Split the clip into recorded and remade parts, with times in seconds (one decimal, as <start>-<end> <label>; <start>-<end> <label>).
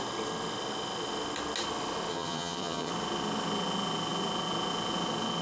0.0-2.1 recorded; 2.1-2.9 remade; 2.9-5.4 recorded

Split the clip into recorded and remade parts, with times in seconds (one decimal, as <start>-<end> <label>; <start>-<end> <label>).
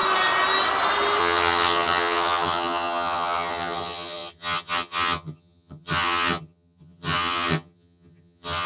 0.0-1.2 recorded; 1.2-8.7 remade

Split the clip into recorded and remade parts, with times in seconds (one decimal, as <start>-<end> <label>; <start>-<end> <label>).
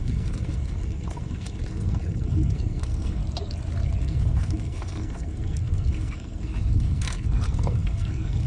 0.0-3.2 remade; 3.2-4.0 recorded; 4.0-8.5 remade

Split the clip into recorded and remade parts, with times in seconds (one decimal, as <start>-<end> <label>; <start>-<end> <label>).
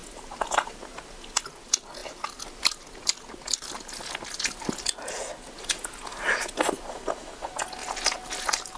0.0-1.0 remade; 1.0-2.0 recorded; 2.0-5.2 remade; 5.2-7.8 recorded; 7.8-8.8 remade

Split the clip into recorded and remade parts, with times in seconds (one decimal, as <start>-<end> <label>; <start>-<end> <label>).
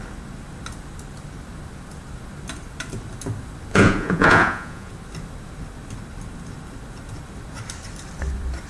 0.0-3.7 recorded; 3.7-4.9 remade; 4.9-8.7 recorded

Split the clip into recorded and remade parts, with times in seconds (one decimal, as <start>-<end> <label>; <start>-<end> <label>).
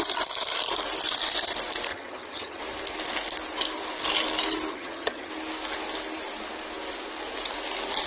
0.0-1.9 recorded; 1.9-2.6 remade; 2.6-4.7 recorded; 4.7-5.3 remade; 5.3-8.1 recorded